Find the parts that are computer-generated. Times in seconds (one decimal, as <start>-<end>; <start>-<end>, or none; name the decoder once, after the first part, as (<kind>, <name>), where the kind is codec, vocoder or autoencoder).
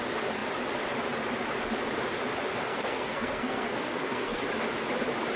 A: 2.5-4.4 (codec, SNAC)